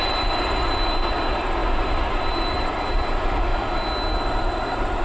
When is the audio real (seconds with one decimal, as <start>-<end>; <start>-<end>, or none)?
3.5-4.3